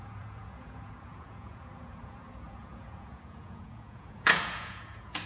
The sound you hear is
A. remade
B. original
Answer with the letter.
A